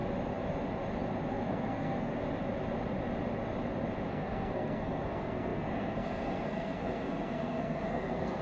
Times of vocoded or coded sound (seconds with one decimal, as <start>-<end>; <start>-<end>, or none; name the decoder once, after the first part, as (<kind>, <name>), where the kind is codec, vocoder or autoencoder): 1.3-2.1 (codec, SNAC); 4.1-8.4